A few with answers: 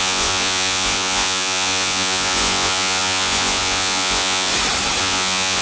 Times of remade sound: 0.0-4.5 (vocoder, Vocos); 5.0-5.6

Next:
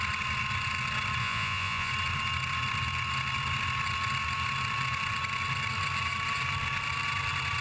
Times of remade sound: 1.2-1.9 (vocoder, Vocos)